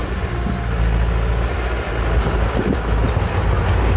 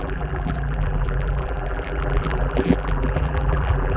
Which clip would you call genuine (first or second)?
first